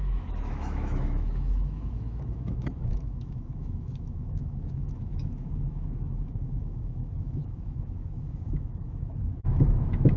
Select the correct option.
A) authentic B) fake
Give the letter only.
B